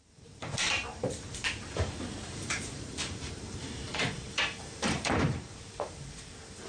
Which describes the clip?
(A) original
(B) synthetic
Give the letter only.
B